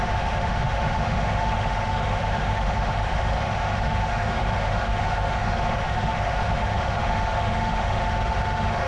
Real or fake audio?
fake